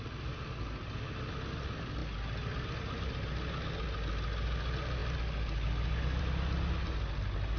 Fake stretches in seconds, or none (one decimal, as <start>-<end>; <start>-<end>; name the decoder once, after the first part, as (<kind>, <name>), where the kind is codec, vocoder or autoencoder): none